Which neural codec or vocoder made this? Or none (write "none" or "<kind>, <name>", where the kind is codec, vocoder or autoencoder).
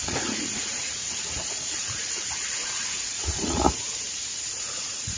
vocoder, Vocos